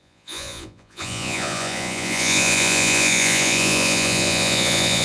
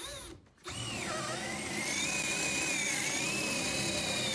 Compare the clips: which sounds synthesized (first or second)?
first